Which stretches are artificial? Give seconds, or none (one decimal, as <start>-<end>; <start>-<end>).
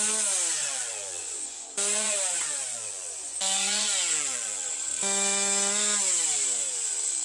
0.6-4.7